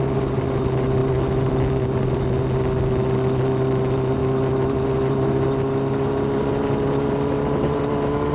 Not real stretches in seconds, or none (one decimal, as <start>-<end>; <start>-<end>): none